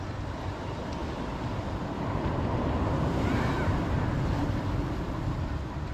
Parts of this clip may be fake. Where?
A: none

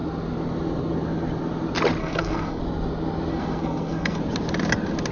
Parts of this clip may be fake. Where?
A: 2.0-2.6 (codec, SNAC); 3.3-4.2

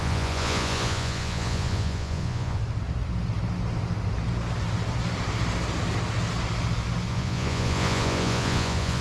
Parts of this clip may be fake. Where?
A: 0.0-2.6 (vocoder, Vocos); 7.1-9.0

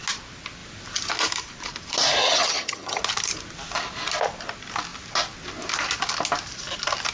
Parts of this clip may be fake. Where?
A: 2.2-3.0 (vocoder, HiFi-GAN)

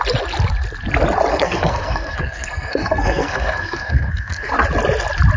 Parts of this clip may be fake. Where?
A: 1.3-4.5 (codec, SNAC)

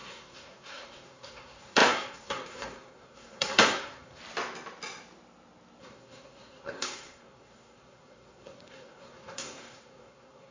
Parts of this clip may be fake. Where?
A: 0.0-4.2 (codec, SNAC); 5.8-10.5